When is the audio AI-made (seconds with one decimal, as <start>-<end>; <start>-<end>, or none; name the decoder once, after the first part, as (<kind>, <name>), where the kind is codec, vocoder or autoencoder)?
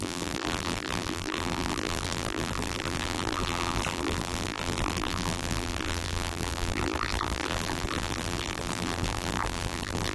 0.0-10.1 (vocoder, BigVGAN v2)